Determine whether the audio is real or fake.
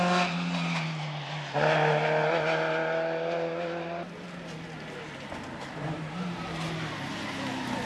real